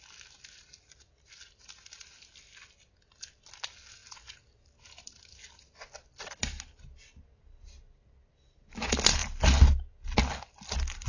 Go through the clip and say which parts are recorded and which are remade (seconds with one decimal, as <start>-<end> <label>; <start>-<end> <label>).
0.0-11.1 recorded

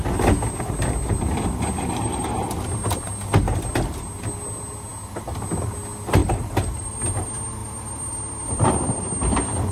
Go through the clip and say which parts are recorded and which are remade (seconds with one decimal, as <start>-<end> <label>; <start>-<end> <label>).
0.0-6.2 recorded; 6.2-7.0 remade; 7.0-7.6 recorded; 7.6-9.0 remade; 9.0-9.7 recorded

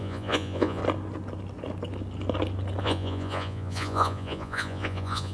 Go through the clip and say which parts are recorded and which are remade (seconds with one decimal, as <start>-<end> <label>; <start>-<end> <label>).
0.0-0.8 remade; 0.8-2.8 recorded; 2.8-5.3 remade

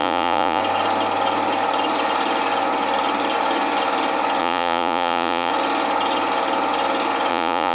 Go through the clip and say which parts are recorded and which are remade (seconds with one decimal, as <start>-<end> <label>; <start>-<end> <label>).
0.0-0.6 remade; 0.6-4.4 recorded; 4.4-5.5 remade; 5.5-7.3 recorded; 7.3-7.7 remade

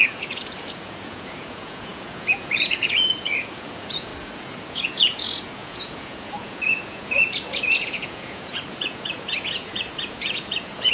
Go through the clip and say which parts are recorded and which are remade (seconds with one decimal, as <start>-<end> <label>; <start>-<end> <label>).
0.0-10.9 remade

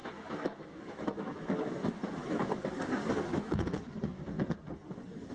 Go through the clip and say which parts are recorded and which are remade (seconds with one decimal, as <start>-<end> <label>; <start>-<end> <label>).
0.0-2.7 remade; 2.7-3.3 recorded; 3.3-3.9 remade; 3.9-5.3 recorded

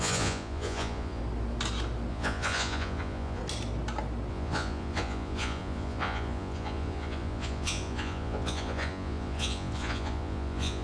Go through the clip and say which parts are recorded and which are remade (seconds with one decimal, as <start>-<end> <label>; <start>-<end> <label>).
0.0-1.2 remade; 1.2-2.1 recorded; 2.1-3.4 remade; 3.4-4.3 recorded; 4.3-10.8 remade

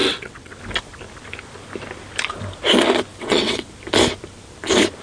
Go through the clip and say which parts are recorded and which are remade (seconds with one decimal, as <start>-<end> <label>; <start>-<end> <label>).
0.0-0.6 remade; 0.6-3.1 recorded; 3.1-3.7 remade; 3.7-5.0 recorded